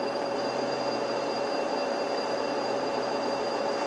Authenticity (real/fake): fake